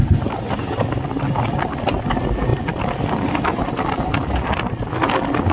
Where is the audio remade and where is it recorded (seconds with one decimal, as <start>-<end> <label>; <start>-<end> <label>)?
0.0-5.5 recorded